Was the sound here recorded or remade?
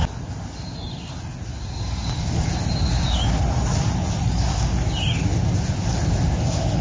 recorded